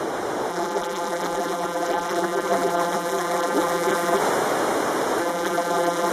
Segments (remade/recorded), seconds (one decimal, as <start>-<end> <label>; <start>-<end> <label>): 0.0-0.5 recorded; 0.5-4.2 remade; 4.2-5.2 recorded; 5.2-6.1 remade